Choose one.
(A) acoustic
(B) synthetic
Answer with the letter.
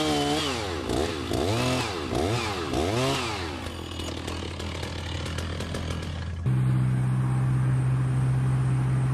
A